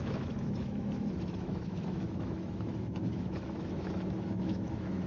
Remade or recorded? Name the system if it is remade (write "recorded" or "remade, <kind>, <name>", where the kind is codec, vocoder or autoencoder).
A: remade, autoencoder, DAC-VAE